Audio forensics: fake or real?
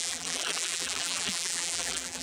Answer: fake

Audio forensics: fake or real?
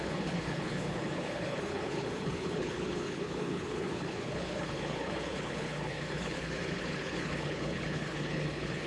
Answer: fake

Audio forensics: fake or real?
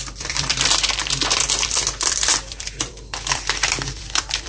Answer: fake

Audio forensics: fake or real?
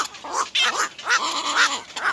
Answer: real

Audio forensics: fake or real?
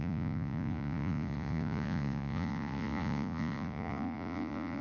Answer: fake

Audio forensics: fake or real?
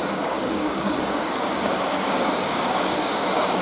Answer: fake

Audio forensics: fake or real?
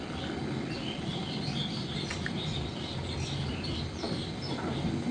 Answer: real